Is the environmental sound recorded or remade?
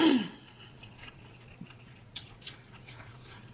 remade